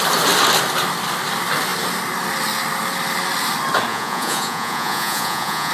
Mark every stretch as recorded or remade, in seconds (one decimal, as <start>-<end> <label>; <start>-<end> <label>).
0.0-3.9 recorded; 3.9-5.7 remade

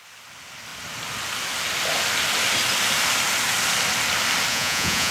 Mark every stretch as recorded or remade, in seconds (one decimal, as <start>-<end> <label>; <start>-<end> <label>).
0.0-4.5 recorded; 4.5-5.1 remade

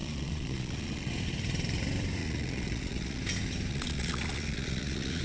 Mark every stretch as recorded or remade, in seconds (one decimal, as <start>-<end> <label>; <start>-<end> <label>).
0.0-1.1 remade; 1.1-2.2 recorded; 2.2-3.2 remade; 3.2-3.7 recorded; 3.7-5.2 remade

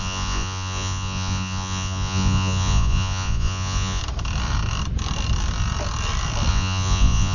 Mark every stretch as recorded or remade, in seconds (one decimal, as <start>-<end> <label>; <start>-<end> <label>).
0.0-4.0 remade; 4.0-6.5 recorded; 6.5-7.3 remade

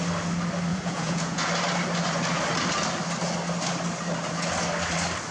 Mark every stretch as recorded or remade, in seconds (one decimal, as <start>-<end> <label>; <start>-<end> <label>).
0.0-0.7 recorded; 0.7-1.5 remade; 1.5-5.3 recorded